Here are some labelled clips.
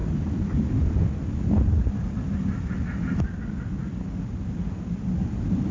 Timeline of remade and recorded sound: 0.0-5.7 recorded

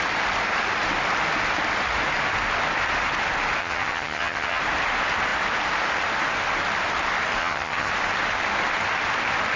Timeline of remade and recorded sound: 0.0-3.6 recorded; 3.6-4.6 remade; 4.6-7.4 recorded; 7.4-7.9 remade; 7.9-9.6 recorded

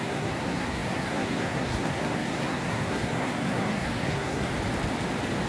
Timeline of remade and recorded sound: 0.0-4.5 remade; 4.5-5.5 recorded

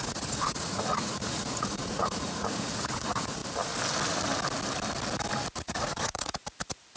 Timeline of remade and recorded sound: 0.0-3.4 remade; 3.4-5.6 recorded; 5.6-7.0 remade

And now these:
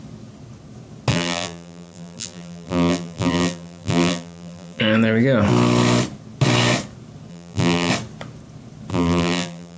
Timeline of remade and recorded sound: 0.0-1.1 recorded; 1.1-4.8 remade; 4.8-7.3 recorded; 7.3-7.9 remade; 7.9-8.9 recorded; 8.9-9.8 remade

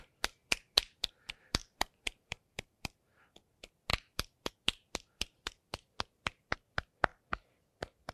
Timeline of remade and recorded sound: 0.0-1.6 recorded; 1.6-3.0 remade; 3.0-3.9 recorded; 3.9-4.5 remade; 4.5-8.1 recorded

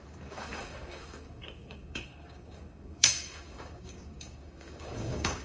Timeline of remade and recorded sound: 0.0-5.4 remade

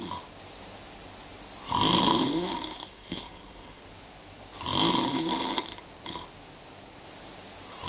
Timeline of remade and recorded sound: 0.0-2.8 recorded; 2.8-3.8 remade; 3.8-7.9 recorded